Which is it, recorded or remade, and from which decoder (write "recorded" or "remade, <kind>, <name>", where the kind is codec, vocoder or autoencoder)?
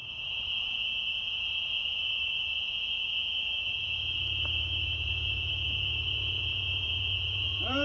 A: remade, vocoder, Vocos